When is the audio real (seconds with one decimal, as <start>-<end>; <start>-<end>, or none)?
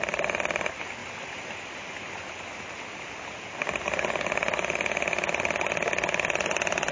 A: 0.0-1.0; 2.2-6.9